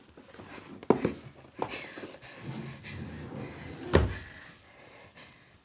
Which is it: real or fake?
real